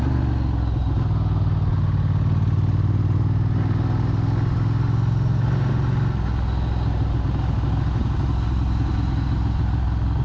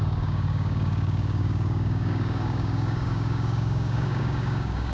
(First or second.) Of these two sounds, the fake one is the second